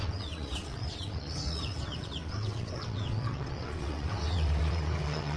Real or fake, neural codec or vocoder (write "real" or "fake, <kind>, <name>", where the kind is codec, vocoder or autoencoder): fake, vocoder, WaveNeXt